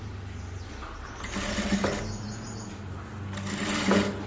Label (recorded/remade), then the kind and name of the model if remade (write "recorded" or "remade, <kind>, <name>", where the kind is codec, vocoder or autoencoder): recorded